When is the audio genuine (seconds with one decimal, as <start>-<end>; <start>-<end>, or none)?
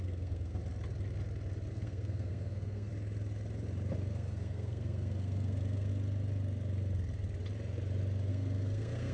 0.6-1.7; 2.9-4.1; 5.9-8.3